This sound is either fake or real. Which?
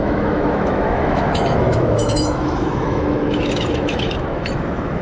fake